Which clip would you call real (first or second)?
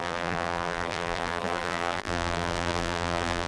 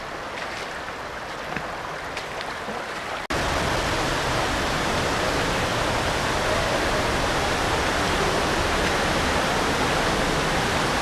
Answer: second